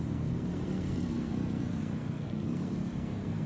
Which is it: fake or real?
fake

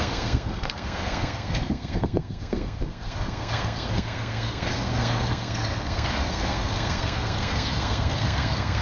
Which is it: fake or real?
fake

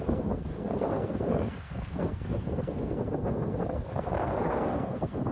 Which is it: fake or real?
fake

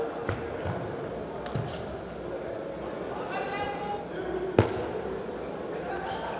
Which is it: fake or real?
real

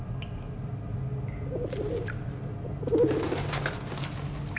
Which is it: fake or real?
real